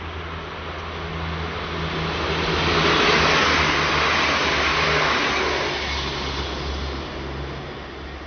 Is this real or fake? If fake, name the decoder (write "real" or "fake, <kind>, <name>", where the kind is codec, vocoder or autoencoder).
real